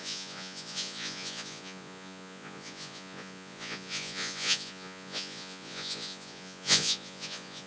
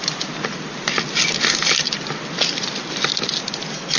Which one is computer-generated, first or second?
first